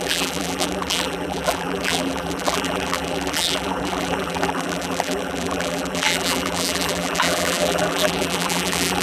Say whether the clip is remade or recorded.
remade